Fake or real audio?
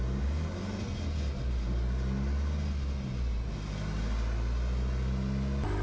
real